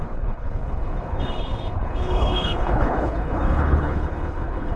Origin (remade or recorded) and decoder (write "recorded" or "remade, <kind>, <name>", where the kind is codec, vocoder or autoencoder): remade, codec, HILCodec